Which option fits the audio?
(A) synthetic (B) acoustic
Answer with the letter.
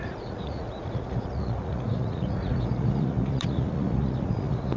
A